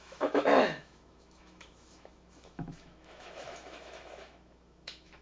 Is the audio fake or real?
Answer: fake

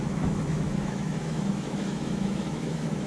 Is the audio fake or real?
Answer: fake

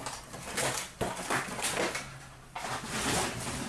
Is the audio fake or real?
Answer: real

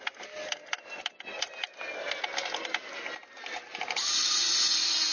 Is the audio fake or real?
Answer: real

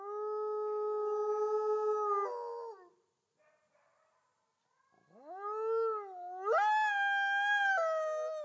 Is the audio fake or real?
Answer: real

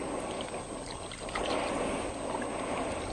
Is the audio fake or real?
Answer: real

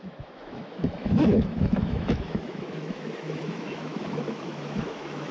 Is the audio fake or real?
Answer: fake